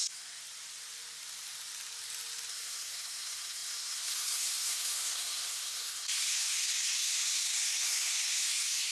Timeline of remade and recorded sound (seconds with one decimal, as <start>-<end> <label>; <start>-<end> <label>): 0.0-0.4 remade; 0.4-2.5 recorded; 2.5-8.9 remade

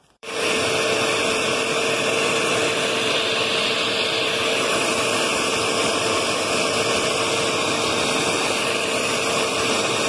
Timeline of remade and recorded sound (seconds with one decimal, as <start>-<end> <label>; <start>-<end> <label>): 0.0-10.1 remade

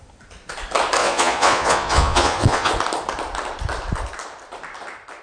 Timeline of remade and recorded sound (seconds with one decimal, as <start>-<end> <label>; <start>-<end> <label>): 0.0-1.0 recorded; 1.0-2.7 remade; 2.7-5.2 recorded

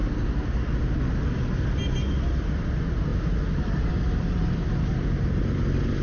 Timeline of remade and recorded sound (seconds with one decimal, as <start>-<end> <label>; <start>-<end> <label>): 0.0-6.0 recorded

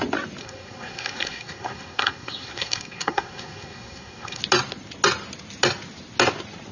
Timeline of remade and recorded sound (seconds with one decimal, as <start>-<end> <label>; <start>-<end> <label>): 0.0-0.4 recorded; 0.4-4.4 remade; 4.4-6.7 recorded

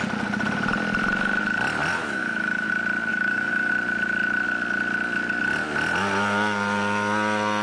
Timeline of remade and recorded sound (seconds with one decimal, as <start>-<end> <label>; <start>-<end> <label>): 0.0-2.0 recorded; 2.0-2.7 remade; 2.7-3.1 recorded; 3.1-3.7 remade; 3.7-7.6 recorded